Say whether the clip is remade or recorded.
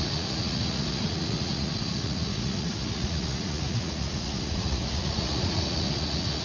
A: remade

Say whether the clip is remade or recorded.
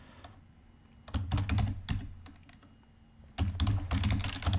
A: recorded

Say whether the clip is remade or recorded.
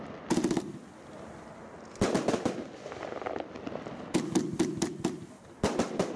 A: recorded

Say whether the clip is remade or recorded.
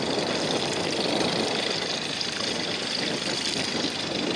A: recorded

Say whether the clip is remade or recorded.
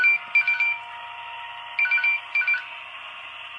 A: recorded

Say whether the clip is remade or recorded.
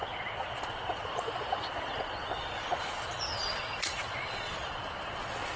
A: remade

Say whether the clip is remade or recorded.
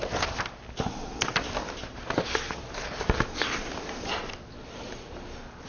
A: recorded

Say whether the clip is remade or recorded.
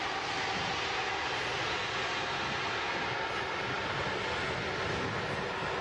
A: recorded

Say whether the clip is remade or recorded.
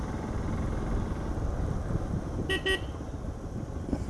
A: recorded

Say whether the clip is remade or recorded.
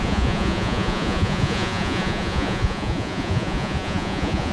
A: remade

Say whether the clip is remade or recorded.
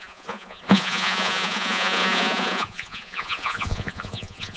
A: remade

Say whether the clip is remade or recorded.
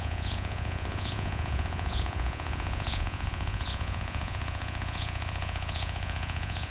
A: remade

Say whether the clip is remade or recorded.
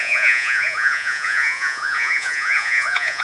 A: remade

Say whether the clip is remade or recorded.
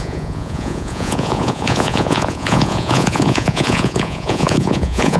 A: remade